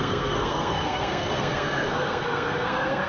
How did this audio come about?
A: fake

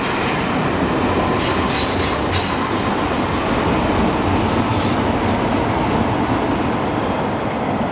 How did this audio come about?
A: real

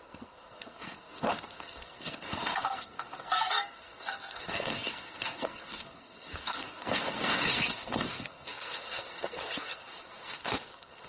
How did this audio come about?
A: fake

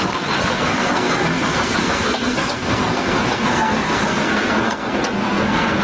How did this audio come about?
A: fake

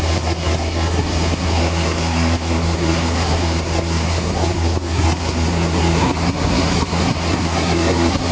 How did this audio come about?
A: fake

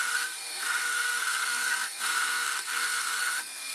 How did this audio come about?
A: fake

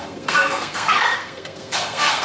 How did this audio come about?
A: fake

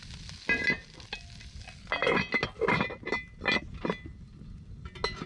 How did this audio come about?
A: real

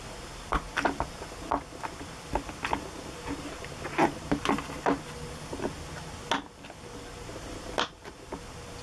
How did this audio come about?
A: real